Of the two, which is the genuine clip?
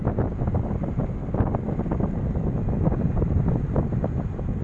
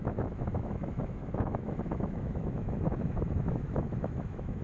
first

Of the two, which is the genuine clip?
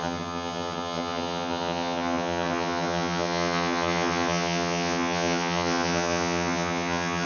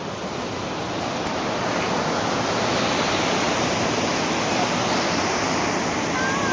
second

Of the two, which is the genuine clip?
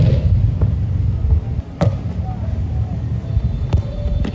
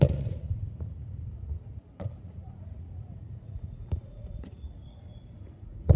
first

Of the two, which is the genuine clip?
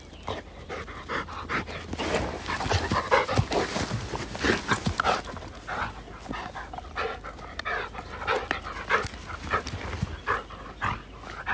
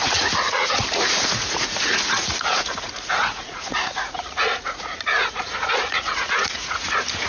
first